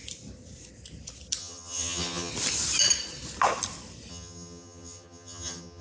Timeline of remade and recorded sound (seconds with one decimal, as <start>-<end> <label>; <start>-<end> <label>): 0.0-1.4 recorded; 1.4-2.3 remade; 2.3-4.1 recorded; 4.1-5.8 remade